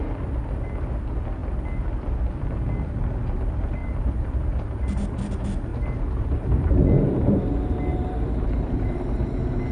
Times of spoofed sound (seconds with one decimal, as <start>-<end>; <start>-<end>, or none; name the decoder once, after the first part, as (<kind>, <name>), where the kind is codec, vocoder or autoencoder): 3.8-5.2 (vocoder, BigVGAN v2); 5.7-7.5; 7.9-9.2